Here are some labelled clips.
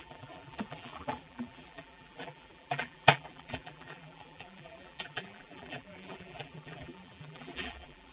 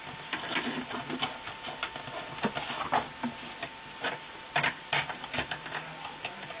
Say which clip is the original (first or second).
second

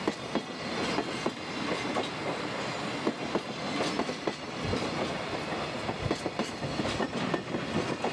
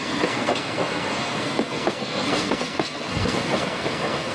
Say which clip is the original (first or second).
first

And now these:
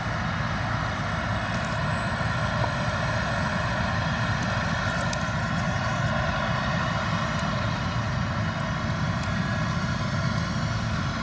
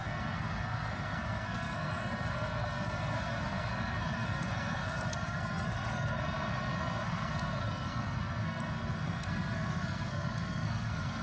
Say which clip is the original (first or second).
first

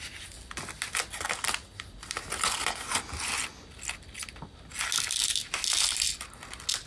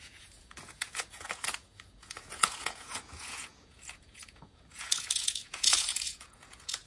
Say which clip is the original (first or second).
first